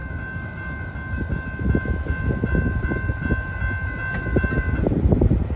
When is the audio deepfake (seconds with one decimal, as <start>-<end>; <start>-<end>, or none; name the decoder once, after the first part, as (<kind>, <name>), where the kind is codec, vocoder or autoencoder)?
none